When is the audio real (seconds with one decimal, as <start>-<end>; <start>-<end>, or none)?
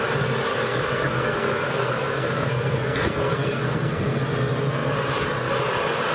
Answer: 0.0-0.5; 4.2-6.1